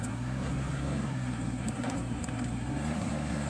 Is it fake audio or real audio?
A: fake